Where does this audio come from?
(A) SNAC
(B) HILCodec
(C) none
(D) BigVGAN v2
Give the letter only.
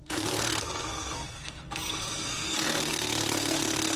A